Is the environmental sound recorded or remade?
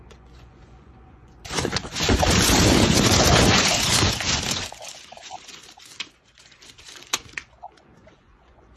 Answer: remade